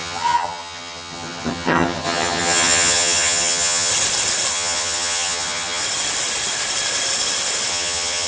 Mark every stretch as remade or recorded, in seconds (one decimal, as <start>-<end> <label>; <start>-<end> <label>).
0.0-3.9 remade; 3.9-4.5 recorded; 4.5-5.8 remade; 5.8-7.7 recorded; 7.7-8.3 remade

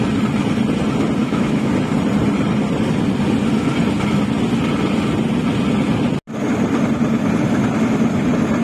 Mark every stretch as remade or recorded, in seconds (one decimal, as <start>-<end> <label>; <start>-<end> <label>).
0.0-1.2 recorded; 1.2-1.7 remade; 1.7-8.6 recorded

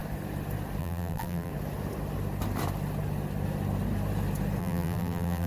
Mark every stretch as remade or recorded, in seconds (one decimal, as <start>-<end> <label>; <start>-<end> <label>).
0.0-0.8 recorded; 0.8-1.5 remade; 1.5-4.6 recorded; 4.6-5.5 remade

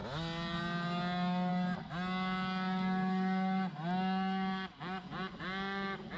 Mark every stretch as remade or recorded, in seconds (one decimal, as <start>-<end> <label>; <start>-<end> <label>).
0.0-6.2 recorded

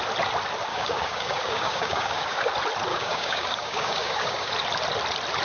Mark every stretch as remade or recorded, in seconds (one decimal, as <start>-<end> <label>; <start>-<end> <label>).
0.0-0.7 recorded; 0.7-2.5 remade; 2.5-2.9 recorded; 2.9-4.5 remade; 4.5-5.4 recorded

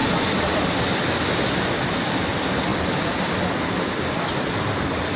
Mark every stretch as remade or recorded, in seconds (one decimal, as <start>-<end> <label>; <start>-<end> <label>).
0.0-5.2 recorded

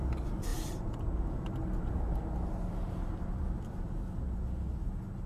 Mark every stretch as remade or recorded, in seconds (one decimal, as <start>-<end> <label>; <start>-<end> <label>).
0.0-5.3 recorded

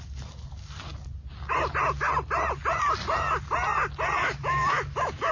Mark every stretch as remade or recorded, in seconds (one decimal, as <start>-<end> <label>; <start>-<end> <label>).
0.0-4.2 recorded; 4.2-5.3 remade